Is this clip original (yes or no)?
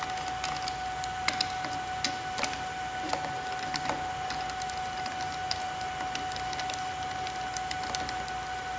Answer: yes